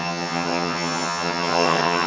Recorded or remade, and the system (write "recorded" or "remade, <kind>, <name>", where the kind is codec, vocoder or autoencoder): remade, vocoder, HiFi-GAN